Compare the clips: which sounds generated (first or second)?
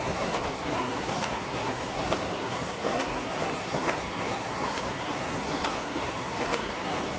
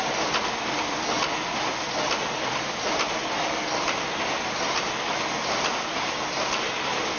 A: first